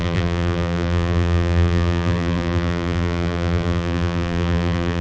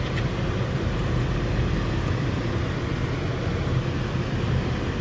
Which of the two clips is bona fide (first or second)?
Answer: second